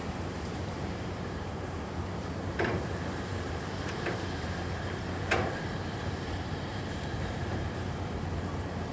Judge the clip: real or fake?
fake